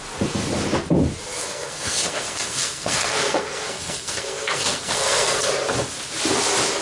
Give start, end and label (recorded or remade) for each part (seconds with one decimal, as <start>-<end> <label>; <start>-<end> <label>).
0.0-1.4 recorded; 1.4-5.5 remade; 5.5-6.8 recorded